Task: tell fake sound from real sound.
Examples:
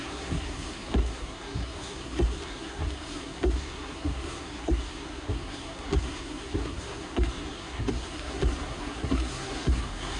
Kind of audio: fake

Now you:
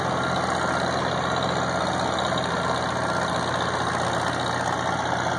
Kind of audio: real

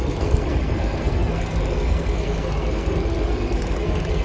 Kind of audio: fake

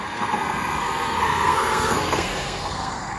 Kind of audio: fake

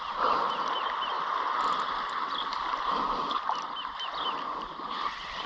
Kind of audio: real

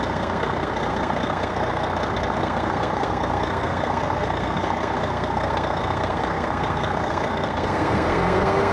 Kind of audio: fake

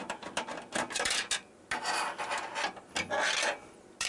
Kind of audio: real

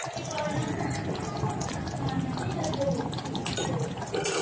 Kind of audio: real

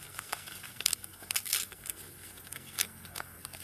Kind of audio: fake